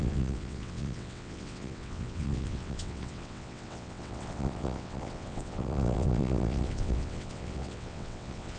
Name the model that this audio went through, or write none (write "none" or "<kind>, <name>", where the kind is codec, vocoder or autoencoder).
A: vocoder, WaveNeXt